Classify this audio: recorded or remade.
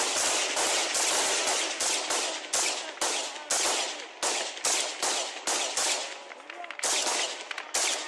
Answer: recorded